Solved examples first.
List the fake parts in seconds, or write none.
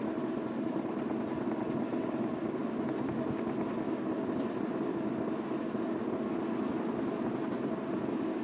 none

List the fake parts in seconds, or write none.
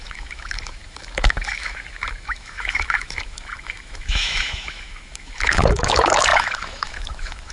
0.0-7.5 (autoencoder, DAC-VAE)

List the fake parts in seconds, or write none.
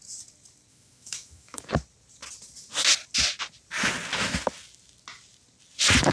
0.7-1.7 (autoencoder, DAC-VAE)